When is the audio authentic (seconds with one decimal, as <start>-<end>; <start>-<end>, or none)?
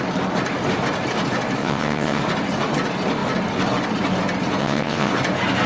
0.0-1.6; 2.2-4.6; 5.1-5.7